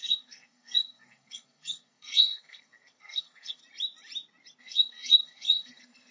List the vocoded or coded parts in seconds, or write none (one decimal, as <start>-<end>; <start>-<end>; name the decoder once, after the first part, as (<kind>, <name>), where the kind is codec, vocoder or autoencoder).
0.0-3.6 (codec, SNAC); 4.6-6.1